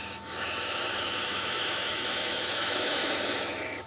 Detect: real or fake fake